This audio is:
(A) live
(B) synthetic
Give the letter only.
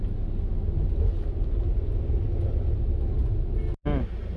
A